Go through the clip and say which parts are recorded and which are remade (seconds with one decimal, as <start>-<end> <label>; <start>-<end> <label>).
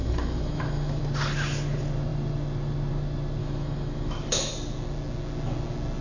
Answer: 0.0-1.0 remade; 1.0-3.4 recorded; 3.4-4.5 remade; 4.5-6.0 recorded